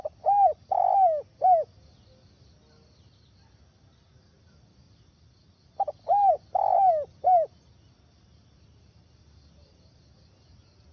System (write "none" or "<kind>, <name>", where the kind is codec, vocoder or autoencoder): none